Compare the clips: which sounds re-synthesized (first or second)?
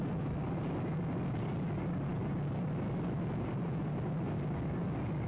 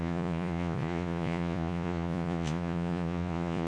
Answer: second